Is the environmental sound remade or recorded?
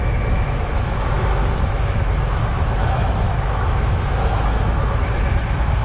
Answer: remade